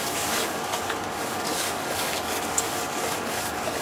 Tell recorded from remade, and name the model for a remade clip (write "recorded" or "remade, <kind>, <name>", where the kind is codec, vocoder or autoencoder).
remade, codec, DAC